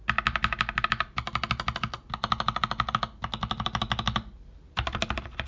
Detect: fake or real real